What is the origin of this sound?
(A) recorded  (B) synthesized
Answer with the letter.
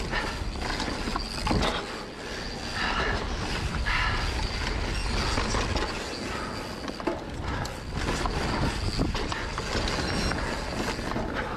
A